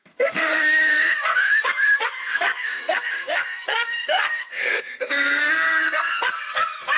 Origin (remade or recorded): remade